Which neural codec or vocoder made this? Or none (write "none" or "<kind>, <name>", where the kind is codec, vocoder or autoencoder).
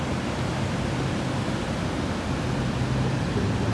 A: none